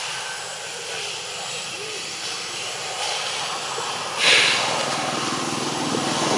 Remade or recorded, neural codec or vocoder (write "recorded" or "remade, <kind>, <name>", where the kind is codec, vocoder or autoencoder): recorded